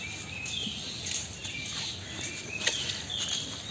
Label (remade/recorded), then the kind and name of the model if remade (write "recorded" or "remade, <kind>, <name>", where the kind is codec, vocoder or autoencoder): recorded